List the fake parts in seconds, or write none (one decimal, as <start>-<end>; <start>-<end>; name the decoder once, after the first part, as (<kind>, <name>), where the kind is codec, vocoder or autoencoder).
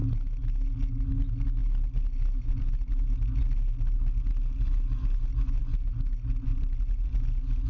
none